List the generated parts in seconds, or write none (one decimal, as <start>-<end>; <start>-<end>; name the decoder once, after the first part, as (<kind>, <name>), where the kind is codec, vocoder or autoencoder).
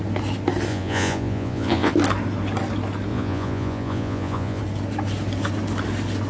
0.7-1.9 (vocoder, Vocos); 3.1-4.6